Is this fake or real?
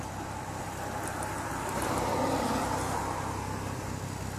real